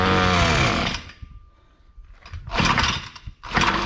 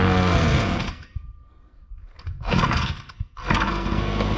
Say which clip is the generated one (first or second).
second